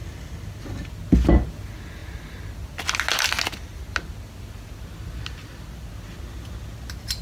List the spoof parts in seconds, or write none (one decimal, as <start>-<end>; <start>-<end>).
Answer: none